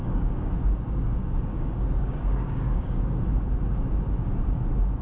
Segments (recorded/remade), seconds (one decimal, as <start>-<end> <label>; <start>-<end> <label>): 0.0-3.0 remade; 3.0-5.0 recorded